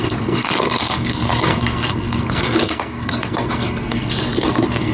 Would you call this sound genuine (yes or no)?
no